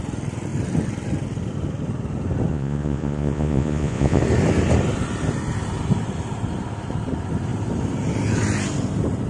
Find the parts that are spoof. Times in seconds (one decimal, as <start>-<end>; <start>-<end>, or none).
2.5-4.2